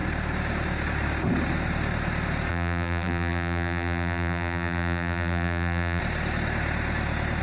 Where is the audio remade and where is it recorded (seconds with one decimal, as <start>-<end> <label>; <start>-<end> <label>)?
0.0-2.5 recorded; 2.5-6.0 remade; 6.0-7.4 recorded